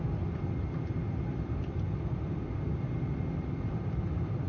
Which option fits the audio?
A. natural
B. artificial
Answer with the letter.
B